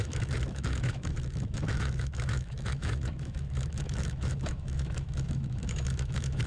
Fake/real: fake